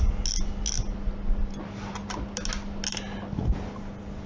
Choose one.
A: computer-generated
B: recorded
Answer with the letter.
B